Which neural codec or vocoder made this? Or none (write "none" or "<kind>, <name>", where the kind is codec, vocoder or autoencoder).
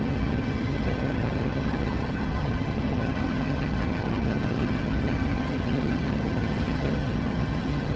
vocoder, HiFi-GAN